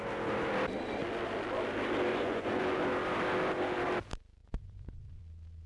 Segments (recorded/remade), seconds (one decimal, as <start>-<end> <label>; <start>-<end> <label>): 0.0-2.1 recorded; 2.1-2.8 remade; 2.8-4.4 recorded; 4.4-5.2 remade; 5.2-5.7 recorded